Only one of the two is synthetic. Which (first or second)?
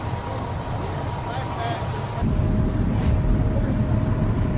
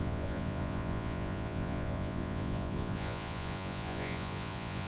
second